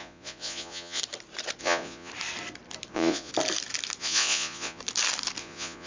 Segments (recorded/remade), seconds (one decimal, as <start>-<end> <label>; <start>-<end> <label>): 0.0-1.0 remade; 1.0-1.6 recorded; 1.6-2.1 remade; 2.1-2.9 recorded; 2.9-3.3 remade; 3.3-4.0 recorded; 4.0-4.8 remade; 4.8-5.4 recorded; 5.4-5.9 remade